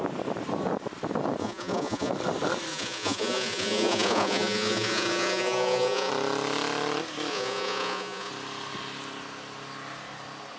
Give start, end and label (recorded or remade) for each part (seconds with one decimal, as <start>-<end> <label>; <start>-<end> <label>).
0.0-1.4 recorded; 1.4-2.1 remade; 2.1-2.7 recorded; 2.7-6.1 remade; 6.1-7.3 recorded; 7.3-8.3 remade; 8.3-10.6 recorded